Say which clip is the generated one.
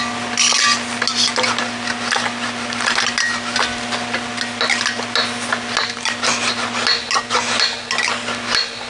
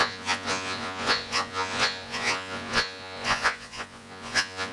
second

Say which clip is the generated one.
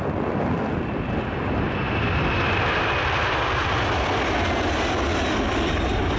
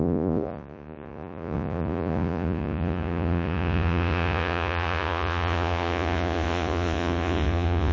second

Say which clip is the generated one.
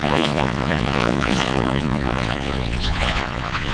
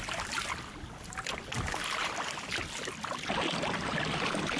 first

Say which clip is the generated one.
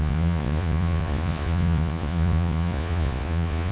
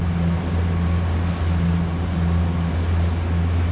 first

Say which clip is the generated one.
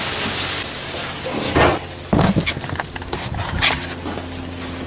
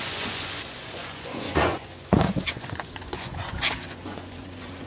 second